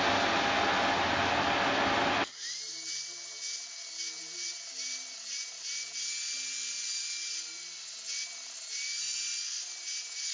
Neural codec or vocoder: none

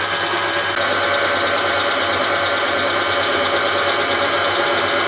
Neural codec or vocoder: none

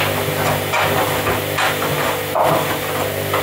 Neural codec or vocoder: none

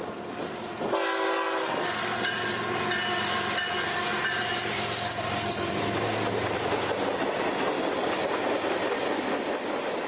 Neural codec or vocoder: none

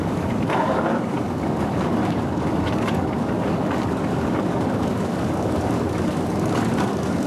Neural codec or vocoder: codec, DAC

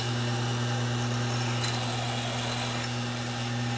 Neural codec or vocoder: none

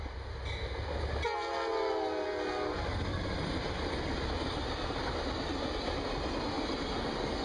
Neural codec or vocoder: none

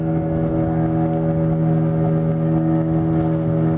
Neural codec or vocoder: none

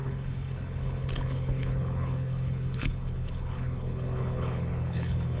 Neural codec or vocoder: codec, HILCodec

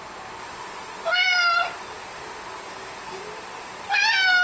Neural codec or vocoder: none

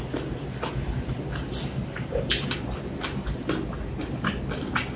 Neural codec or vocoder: none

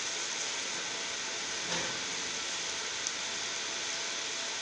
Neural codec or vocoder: none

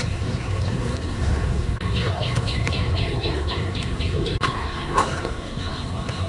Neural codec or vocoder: codec, SNAC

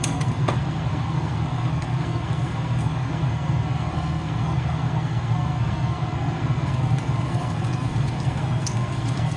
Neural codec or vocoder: codec, SNAC